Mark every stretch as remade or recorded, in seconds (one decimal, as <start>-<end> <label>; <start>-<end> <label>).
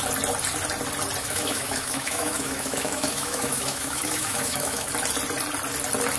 0.0-1.2 recorded; 1.2-4.9 remade; 4.9-6.2 recorded